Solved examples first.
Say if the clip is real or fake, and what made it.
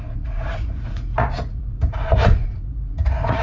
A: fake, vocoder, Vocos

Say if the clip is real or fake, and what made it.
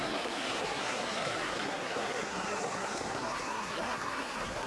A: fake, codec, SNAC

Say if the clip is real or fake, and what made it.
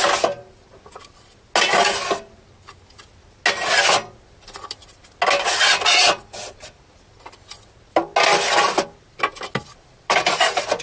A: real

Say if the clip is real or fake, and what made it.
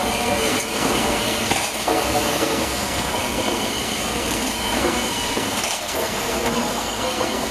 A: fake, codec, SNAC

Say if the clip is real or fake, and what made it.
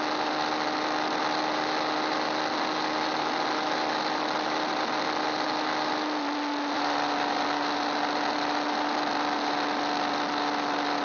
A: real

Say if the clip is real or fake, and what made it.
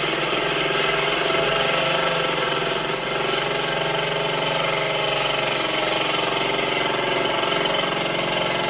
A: real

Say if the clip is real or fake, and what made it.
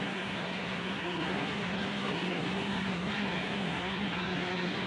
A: fake, codec, SNAC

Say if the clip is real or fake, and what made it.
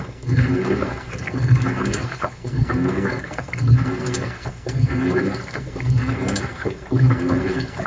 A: fake, codec, SNAC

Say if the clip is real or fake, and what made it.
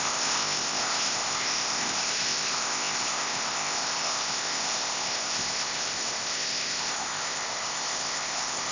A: fake, codec, ZipCodec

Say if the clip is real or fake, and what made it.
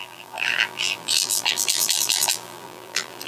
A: fake, vocoder, BigVGAN v2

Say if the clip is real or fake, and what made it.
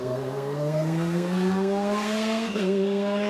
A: fake, codec, SNAC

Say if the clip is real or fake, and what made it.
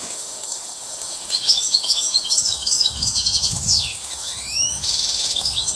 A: fake, autoencoder, DAC-VAE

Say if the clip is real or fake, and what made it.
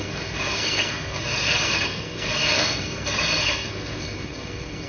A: fake, codec, SNAC